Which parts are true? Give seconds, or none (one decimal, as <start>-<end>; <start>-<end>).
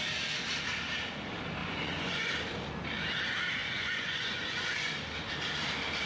0.0-1.6; 2.3-3.6; 4.9-6.1